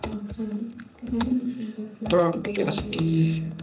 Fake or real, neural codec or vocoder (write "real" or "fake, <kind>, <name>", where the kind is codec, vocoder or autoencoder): fake, codec, SNAC